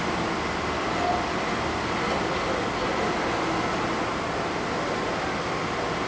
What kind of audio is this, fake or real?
real